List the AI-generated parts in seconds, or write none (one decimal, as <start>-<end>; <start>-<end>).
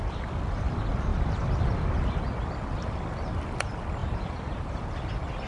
4.0-4.8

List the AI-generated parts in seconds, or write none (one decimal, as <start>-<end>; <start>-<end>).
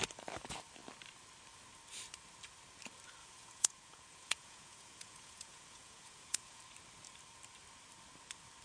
3.2-6.6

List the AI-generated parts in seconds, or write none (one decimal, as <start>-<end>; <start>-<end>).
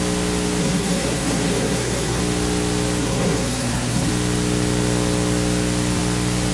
0.6-2.2; 3.0-4.1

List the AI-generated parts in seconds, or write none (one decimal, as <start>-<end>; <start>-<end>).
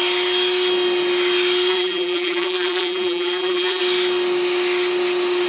1.7-3.8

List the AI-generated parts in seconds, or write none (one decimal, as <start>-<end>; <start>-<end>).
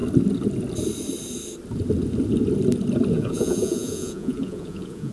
3.1-5.1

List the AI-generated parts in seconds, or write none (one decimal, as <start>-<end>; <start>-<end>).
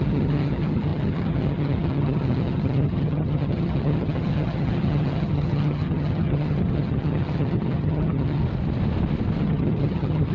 0.0-8.4; 9.4-10.3